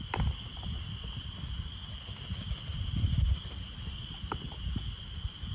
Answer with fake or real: real